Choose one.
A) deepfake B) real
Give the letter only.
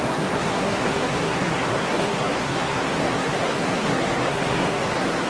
A